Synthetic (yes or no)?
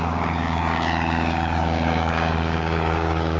yes